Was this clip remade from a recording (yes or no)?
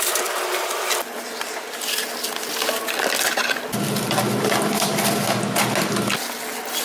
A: no